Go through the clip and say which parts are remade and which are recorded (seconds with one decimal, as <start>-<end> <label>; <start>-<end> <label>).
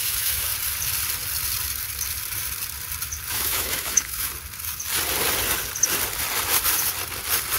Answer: 0.0-0.5 remade; 0.5-3.3 recorded; 3.3-4.3 remade; 4.3-7.6 recorded